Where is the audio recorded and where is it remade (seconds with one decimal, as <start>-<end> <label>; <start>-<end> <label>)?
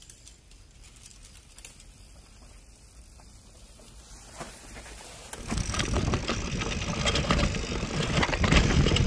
0.0-9.1 recorded